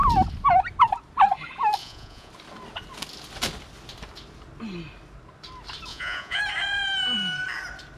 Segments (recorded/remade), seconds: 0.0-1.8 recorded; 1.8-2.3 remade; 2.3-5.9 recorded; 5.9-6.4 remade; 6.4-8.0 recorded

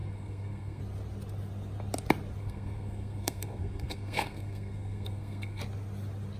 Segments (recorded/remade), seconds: 0.0-0.8 remade; 0.8-2.4 recorded; 2.4-5.6 remade; 5.6-6.4 recorded

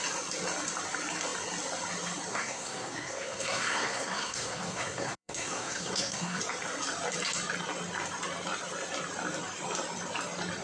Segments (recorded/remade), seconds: 0.0-2.3 recorded; 2.3-6.4 remade; 6.4-10.6 recorded

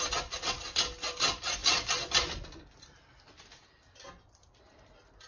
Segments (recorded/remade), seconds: 0.0-1.6 recorded; 1.6-4.8 remade; 4.8-5.3 recorded

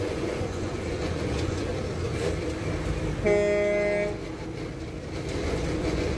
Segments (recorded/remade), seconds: 0.0-1.7 remade; 1.7-5.4 recorded; 5.4-6.2 remade